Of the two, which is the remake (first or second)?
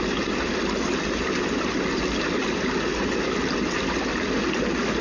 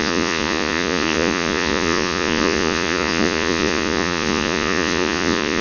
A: second